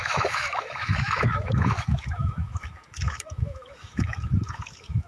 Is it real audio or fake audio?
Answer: fake